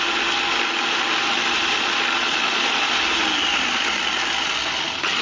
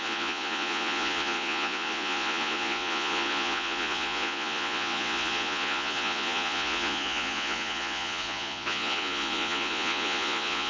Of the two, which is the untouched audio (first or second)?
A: first